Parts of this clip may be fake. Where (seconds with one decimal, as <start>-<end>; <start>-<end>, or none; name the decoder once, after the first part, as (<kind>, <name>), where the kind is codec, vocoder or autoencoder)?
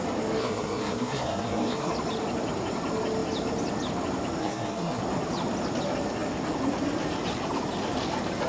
0.4-1.9 (codec, SNAC); 4.4-5.0